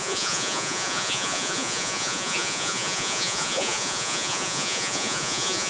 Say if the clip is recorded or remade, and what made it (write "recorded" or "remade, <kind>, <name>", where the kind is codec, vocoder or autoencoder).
remade, vocoder, Vocos